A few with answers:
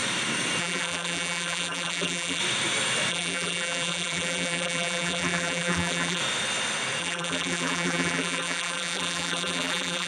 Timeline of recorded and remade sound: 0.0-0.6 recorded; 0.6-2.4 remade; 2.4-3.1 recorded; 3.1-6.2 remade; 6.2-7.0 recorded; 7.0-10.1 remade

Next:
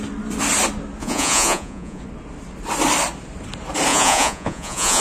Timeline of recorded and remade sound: 0.0-1.0 recorded; 1.0-2.0 remade; 2.0-3.9 recorded; 3.9-5.0 remade